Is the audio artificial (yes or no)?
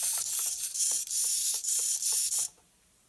yes